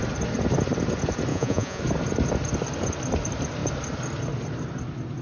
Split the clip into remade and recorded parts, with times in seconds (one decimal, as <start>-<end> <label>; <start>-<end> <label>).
0.0-1.3 recorded; 1.3-1.8 remade; 1.8-5.2 recorded